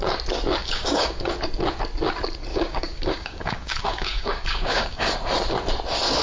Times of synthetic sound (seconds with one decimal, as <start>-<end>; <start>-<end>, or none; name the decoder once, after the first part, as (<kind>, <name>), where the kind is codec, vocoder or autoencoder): 0.6-1.3 (codec, DAC); 2.5-5.1